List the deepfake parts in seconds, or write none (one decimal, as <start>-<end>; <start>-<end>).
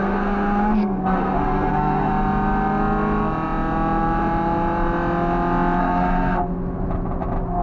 0.0-2.1; 5.8-6.4